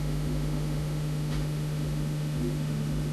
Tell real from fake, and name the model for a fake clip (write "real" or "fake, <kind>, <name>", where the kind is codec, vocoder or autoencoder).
fake, autoencoder, DAC-VAE